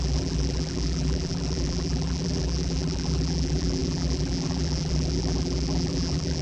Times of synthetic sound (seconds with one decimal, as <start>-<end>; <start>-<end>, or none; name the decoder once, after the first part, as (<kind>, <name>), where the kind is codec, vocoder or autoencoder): 0.0-6.4 (vocoder, BigVGAN v2)